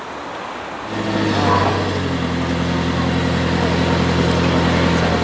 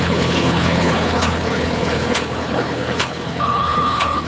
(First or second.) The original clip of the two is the first